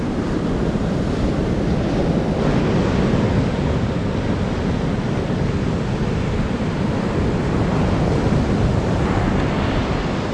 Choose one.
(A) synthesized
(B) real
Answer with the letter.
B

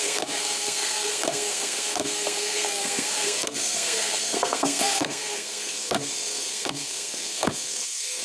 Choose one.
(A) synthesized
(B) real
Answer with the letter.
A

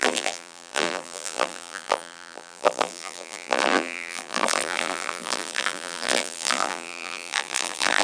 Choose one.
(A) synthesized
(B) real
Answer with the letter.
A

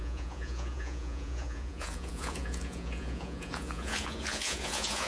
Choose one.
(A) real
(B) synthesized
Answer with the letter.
B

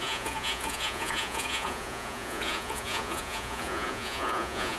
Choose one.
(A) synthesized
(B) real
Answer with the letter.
A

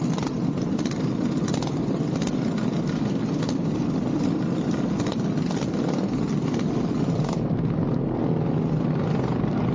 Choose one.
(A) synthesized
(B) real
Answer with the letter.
B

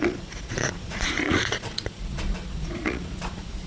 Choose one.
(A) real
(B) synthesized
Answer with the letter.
B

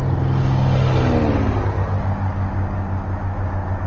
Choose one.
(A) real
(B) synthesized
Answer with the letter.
A